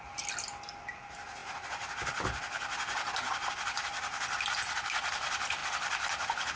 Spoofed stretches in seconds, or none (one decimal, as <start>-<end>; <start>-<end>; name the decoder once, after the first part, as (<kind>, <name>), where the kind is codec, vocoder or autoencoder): none